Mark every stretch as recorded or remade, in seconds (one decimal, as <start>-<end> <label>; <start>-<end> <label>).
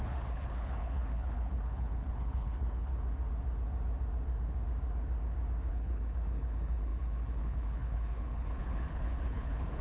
0.0-2.9 remade; 2.9-5.7 recorded; 5.7-9.8 remade